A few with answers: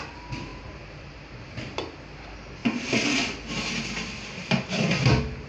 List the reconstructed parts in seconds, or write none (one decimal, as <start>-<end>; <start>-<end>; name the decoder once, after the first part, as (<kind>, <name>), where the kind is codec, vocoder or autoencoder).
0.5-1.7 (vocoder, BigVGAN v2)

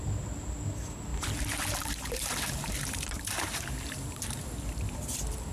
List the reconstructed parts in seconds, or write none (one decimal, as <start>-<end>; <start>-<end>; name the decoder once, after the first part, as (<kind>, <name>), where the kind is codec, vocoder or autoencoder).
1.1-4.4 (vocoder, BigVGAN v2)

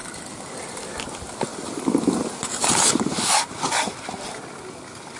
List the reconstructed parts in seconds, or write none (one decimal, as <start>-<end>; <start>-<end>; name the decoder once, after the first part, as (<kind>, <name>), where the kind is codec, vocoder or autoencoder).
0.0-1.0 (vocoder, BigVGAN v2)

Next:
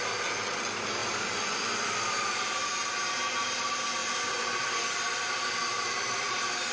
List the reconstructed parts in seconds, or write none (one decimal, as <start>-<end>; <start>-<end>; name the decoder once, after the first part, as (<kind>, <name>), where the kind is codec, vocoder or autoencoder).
1.0-2.5 (vocoder, BigVGAN v2); 4.0-6.7